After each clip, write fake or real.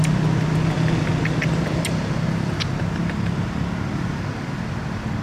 real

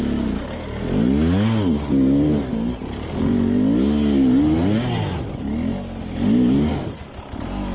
real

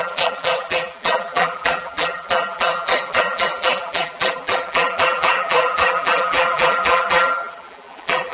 fake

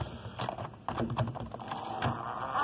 real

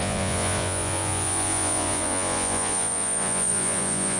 fake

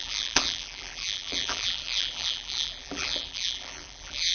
fake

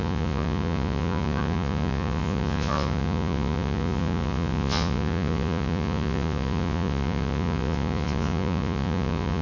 fake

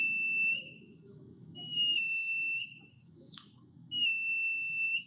fake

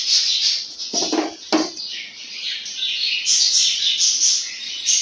real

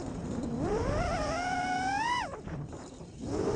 fake